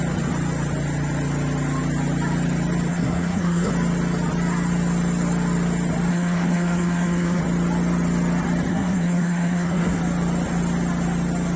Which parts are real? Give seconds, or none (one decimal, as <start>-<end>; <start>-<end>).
0.0-2.9; 3.7-6.1; 7.4-8.7; 10.0-11.6